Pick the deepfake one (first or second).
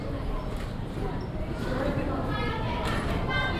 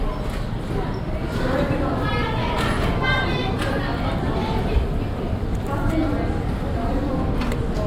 first